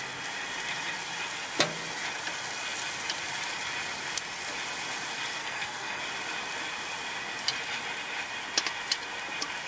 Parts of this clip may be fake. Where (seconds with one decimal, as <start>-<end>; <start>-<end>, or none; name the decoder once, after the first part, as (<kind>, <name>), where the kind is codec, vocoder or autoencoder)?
5.4-6.0 (codec, SNAC)

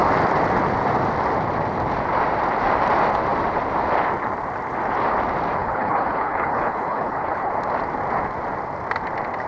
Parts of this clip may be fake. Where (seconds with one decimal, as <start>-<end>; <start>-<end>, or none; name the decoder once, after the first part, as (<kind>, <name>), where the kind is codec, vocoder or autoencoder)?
5.6-7.5 (codec, HILCodec)

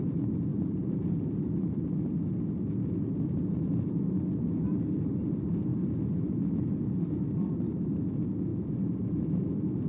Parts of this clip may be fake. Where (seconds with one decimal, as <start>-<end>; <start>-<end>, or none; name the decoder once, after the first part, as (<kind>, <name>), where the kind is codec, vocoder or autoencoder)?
0.5-1.5 (vocoder, BigVGAN v2); 8.5-9.2

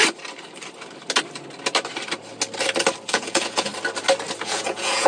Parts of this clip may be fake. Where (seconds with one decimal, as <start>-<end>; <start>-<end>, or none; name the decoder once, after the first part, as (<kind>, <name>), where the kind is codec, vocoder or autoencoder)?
3.1-3.7 (vocoder, Vocos); 4.4-5.1

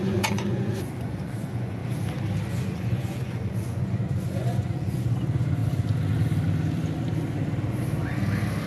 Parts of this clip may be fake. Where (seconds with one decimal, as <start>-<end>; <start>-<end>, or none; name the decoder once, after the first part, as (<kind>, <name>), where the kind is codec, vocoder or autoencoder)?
0.0-1.8 (vocoder, Vocos); 2.5-5.6

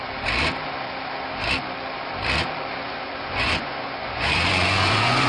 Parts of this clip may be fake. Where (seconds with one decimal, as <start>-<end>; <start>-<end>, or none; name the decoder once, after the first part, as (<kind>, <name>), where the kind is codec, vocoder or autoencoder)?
2.8-5.3 (vocoder, Vocos)